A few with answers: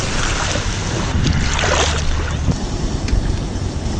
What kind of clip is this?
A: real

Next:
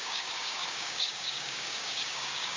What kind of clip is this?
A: fake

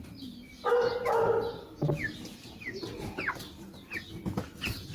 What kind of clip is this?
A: real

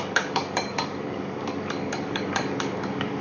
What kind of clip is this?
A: fake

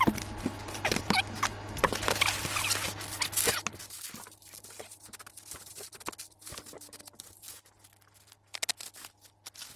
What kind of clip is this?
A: real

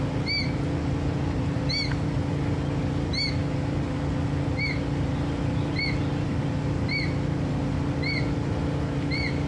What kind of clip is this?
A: real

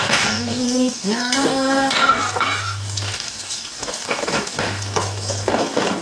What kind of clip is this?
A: fake